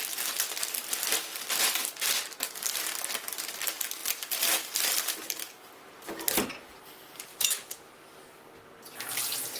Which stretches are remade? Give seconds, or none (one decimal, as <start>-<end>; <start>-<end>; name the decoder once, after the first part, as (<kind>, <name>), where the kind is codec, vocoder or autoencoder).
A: 7.3-8.4 (autoencoder, DAC-VAE)